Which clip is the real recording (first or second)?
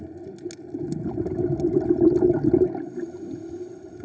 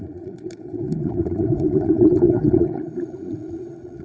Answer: first